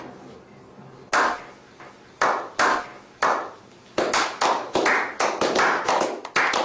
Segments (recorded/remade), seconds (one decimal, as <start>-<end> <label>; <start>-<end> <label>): 0.0-6.6 recorded